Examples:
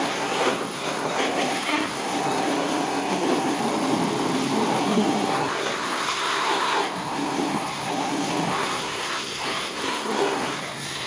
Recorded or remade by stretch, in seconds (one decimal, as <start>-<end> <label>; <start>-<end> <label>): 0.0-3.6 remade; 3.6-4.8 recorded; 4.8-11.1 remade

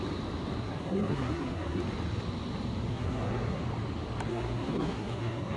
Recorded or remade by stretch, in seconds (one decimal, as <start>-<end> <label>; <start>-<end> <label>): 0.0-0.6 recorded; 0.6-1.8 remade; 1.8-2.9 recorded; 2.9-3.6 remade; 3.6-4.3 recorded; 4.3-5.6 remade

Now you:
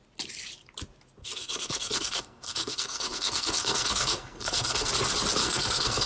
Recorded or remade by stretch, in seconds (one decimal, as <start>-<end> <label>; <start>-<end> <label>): 0.0-1.2 recorded; 1.2-4.9 remade; 4.9-5.4 recorded; 5.4-6.1 remade

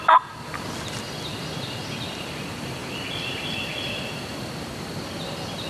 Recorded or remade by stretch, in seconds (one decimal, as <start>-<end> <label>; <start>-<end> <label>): 0.0-5.7 recorded

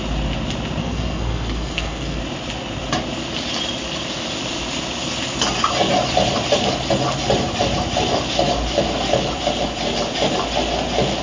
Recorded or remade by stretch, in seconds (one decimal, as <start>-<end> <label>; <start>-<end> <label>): 0.0-0.8 recorded; 0.8-2.2 remade; 2.2-11.2 recorded

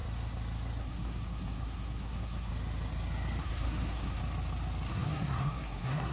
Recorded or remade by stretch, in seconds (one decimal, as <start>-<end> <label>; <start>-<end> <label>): 0.0-0.8 recorded; 0.8-2.5 remade; 2.5-3.4 recorded; 3.4-4.2 remade; 4.2-4.9 recorded; 4.9-6.1 remade

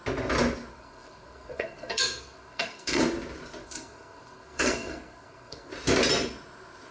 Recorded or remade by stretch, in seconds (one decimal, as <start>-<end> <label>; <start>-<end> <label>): 0.0-0.7 recorded; 0.7-3.0 remade; 3.0-3.6 recorded; 3.6-5.7 remade; 5.7-6.9 recorded